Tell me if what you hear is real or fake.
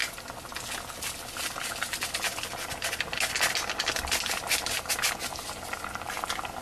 real